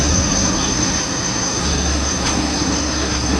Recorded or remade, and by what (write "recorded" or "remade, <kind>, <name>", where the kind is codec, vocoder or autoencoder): remade, codec, SNAC